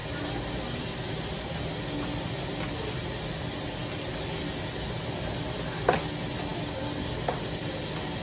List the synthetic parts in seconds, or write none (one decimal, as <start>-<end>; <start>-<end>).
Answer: none